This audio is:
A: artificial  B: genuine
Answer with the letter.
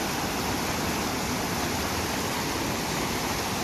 B